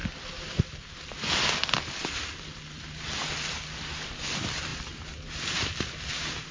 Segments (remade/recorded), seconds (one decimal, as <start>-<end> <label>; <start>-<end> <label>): 0.0-6.5 recorded